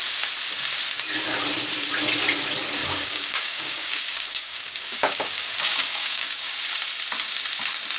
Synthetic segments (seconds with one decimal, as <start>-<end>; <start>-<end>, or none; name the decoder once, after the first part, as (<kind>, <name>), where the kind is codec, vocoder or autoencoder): 2.8-6.5 (codec, DAC)